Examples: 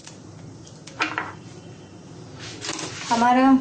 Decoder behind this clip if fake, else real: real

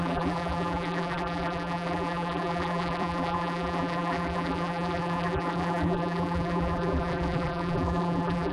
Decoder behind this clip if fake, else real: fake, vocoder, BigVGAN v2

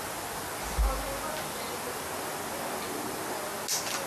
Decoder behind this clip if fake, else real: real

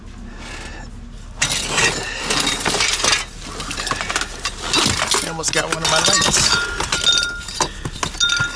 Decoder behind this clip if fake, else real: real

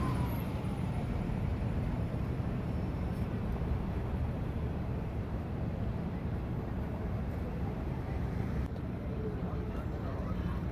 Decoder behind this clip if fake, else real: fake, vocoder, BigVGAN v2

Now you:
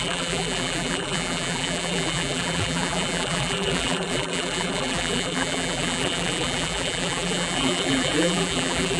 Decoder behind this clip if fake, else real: fake, vocoder, BigVGAN v2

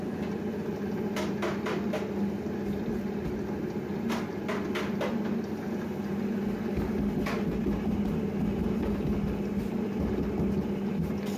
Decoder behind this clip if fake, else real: real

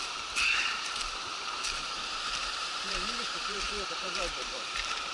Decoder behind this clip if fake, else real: fake, vocoder, BigVGAN v2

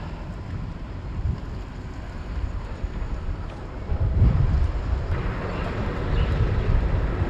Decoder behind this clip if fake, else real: fake, vocoder, BigVGAN v2